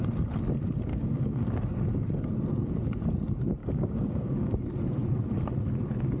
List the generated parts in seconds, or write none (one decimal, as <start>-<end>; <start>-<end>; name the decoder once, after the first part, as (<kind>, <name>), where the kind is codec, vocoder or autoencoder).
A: 0.9-1.6 (codec, DAC); 3.6-4.5